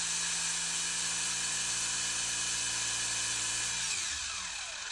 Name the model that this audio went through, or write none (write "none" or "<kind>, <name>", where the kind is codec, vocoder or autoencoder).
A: none